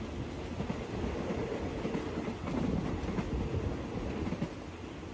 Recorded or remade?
recorded